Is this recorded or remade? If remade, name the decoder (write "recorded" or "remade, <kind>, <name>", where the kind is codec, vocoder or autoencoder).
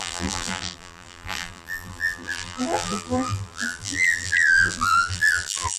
remade, vocoder, BigVGAN v2